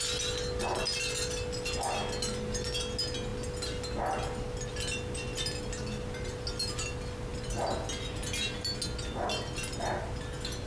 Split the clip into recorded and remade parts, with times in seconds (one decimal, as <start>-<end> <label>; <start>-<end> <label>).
0.0-10.7 recorded